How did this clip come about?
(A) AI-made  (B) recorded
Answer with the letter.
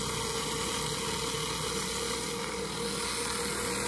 B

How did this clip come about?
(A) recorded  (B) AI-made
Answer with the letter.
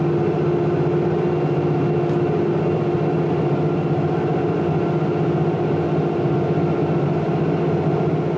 A